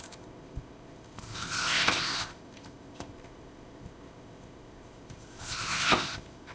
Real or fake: fake